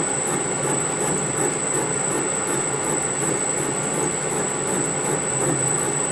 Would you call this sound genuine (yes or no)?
yes